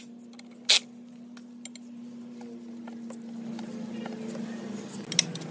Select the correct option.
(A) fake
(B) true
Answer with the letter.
B